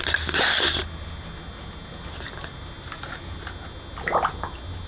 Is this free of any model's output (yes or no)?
yes